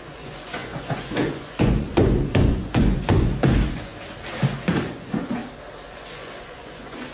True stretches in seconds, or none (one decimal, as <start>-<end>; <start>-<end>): 3.9-4.5; 5.4-5.9